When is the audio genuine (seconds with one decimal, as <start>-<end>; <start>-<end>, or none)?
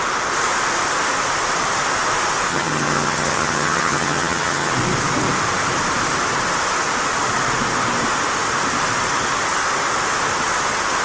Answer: 0.0-2.5; 4.7-11.0